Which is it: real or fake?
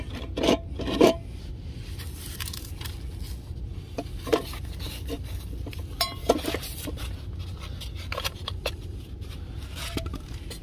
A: real